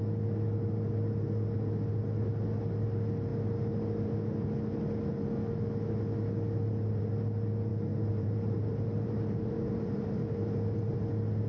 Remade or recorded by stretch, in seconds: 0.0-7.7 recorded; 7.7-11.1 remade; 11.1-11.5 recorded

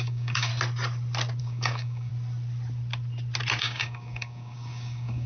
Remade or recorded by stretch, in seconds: 0.0-0.5 remade; 0.5-1.4 recorded; 1.4-2.1 remade; 2.1-3.6 recorded; 3.6-5.3 remade

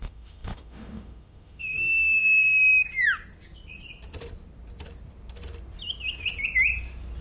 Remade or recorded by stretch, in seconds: 0.0-2.7 remade; 2.7-7.2 recorded

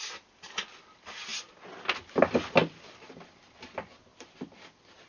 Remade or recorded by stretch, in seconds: 0.0-5.1 recorded

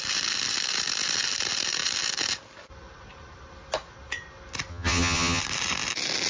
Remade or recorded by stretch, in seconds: 0.0-4.7 recorded; 4.7-5.4 remade; 5.4-6.3 recorded

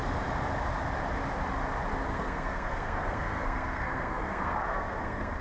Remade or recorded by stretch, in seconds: 0.0-2.1 recorded; 2.1-5.4 remade